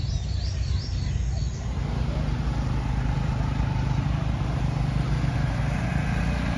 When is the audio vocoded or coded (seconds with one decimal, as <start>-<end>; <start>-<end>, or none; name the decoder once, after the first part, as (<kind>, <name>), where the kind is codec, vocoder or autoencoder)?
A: 0.0-0.9 (vocoder, BigVGAN v2); 1.6-6.6